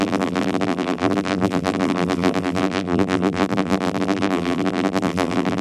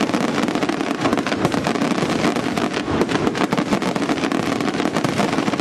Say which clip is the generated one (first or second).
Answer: first